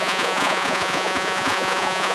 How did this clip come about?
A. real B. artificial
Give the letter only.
B